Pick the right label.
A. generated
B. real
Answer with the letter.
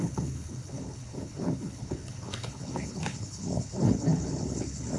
A